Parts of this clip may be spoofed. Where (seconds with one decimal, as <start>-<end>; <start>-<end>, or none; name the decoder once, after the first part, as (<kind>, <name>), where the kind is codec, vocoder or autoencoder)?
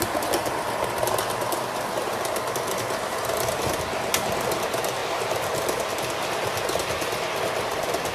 5.0-5.9 (vocoder, BigVGAN v2)